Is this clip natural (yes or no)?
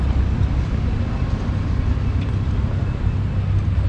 yes